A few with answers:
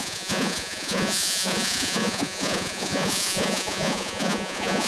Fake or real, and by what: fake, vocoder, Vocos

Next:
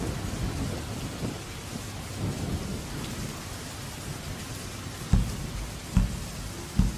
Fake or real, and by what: real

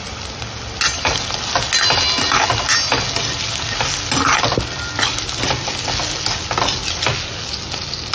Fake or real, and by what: real